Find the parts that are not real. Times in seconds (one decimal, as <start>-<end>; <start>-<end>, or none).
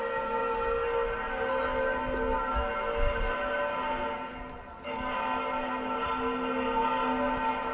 none